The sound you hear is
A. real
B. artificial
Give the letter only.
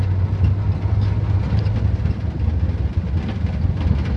A